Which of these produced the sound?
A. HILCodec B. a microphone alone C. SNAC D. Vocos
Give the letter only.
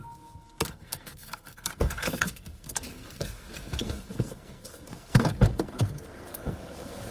C